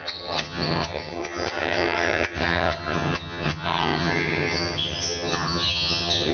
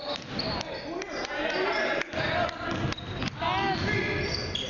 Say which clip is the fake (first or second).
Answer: first